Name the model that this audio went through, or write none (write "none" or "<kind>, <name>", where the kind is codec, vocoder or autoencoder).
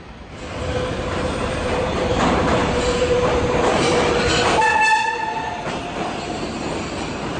vocoder, BigVGAN v2